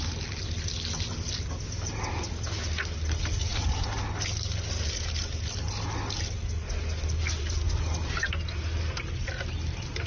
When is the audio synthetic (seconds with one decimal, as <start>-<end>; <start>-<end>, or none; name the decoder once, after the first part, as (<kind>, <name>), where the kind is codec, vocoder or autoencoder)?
none